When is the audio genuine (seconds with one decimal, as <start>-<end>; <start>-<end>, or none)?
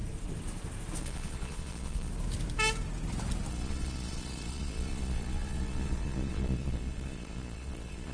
0.0-1.0; 2.1-3.5